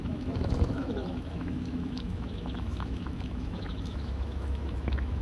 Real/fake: fake